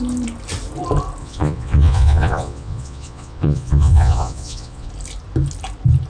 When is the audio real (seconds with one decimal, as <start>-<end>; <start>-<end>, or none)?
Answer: 0.0-1.2; 4.9-6.1